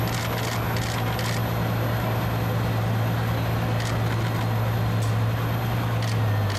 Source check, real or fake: real